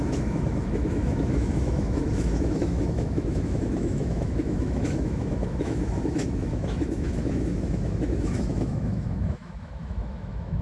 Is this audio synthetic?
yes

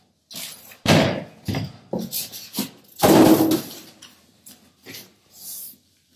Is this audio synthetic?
no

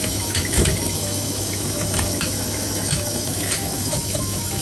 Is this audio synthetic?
yes